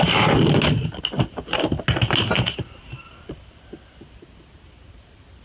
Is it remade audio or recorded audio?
recorded